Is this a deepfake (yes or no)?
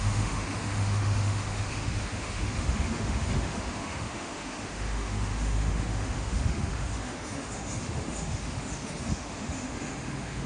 yes